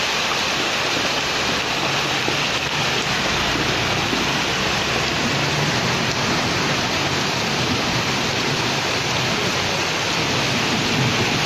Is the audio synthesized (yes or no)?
no